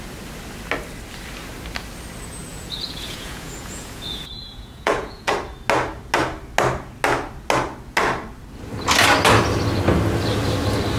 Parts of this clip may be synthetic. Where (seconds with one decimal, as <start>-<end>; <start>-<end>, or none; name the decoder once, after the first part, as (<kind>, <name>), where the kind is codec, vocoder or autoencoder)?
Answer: 2.5-5.3 (vocoder, Vocos)